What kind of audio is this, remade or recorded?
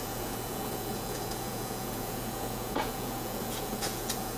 remade